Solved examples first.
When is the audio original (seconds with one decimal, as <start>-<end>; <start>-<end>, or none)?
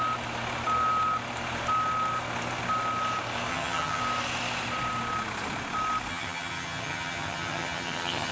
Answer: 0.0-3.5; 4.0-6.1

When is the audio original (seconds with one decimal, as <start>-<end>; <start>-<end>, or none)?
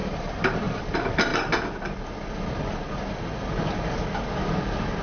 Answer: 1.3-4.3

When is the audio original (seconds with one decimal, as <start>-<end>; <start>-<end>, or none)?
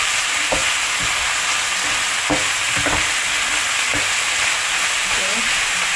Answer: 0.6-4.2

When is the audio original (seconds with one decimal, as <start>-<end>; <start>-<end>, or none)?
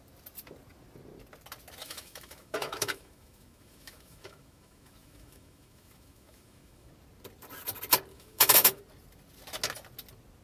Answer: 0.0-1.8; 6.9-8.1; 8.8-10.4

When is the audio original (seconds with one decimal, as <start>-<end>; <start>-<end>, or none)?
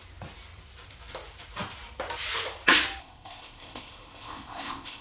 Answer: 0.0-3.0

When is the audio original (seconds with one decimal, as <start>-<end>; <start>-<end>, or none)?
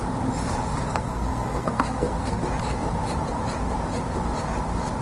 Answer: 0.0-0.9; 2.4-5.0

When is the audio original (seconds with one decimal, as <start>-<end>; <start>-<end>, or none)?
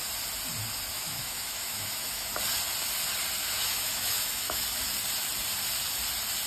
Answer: 0.0-0.9; 2.3-3.4; 4.6-6.5